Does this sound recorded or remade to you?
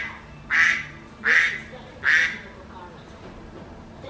recorded